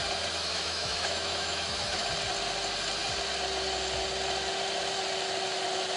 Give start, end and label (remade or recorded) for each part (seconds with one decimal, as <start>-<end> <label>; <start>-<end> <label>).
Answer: 0.0-0.5 recorded; 0.5-2.1 remade; 2.1-6.0 recorded